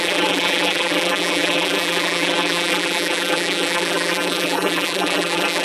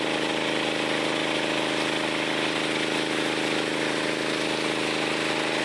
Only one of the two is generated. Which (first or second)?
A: first